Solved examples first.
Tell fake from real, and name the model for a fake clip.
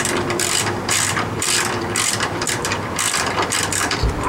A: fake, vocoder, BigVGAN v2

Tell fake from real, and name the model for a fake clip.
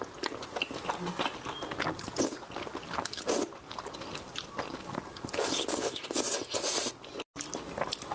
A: real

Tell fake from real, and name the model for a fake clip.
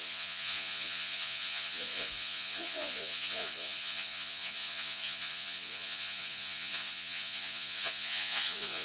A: fake, vocoder, Vocos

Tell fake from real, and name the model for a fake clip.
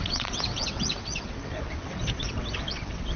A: fake, vocoder, WaveNeXt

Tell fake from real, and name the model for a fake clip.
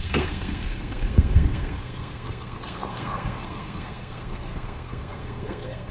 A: fake, codec, SNAC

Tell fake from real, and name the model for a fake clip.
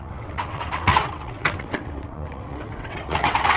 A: fake, vocoder, WaveNeXt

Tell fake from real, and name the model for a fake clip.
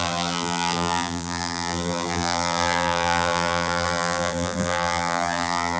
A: fake, vocoder, BigVGAN v2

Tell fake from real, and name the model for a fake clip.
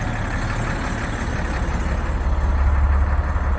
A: real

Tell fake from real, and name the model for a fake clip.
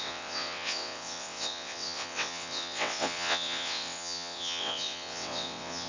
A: fake, vocoder, WaveNeXt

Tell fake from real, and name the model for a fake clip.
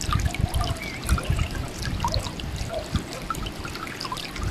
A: real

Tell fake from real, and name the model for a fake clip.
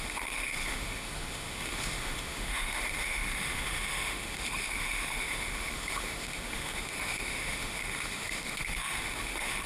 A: fake, autoencoder, DAC-VAE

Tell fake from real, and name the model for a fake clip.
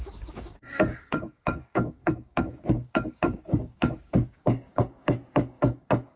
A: fake, codec, DAC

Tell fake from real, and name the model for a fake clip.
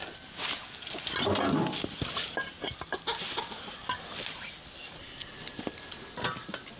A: real